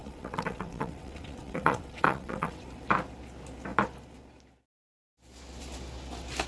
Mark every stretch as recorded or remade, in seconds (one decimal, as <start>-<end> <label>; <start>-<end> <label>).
0.0-2.7 remade; 2.7-6.5 recorded